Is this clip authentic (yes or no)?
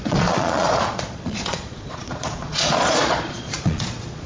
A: no